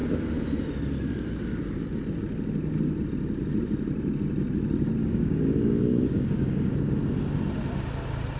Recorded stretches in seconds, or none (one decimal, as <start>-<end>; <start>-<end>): 0.0-5.0; 6.7-8.4